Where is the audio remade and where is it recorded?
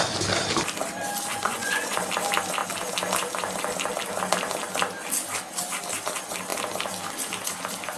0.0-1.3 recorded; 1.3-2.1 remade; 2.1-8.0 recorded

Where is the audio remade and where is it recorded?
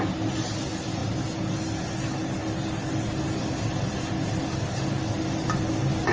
0.0-6.1 recorded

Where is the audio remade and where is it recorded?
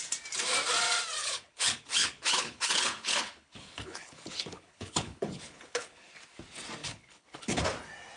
0.0-1.2 recorded; 1.2-6.1 remade; 6.1-6.8 recorded; 6.8-7.6 remade; 7.6-8.2 recorded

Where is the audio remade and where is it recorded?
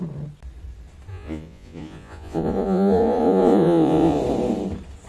0.0-1.1 recorded; 1.1-4.2 remade; 4.2-5.1 recorded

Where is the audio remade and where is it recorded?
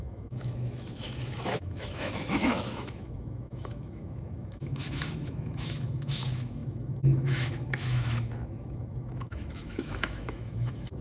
0.0-11.0 remade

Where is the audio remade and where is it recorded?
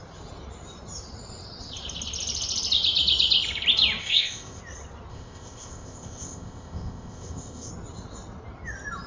0.0-4.0 recorded; 4.0-4.6 remade; 4.6-5.1 recorded; 5.1-7.7 remade; 7.7-9.1 recorded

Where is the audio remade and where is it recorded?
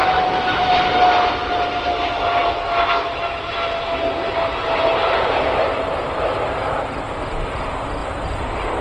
0.0-0.8 remade; 0.8-5.0 recorded; 5.0-6.5 remade; 6.5-8.0 recorded; 8.0-8.8 remade